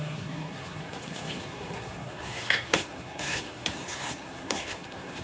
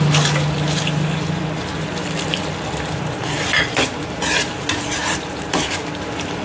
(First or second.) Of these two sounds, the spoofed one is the first